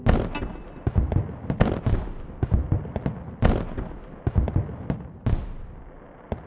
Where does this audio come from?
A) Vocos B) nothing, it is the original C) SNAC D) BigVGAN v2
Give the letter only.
B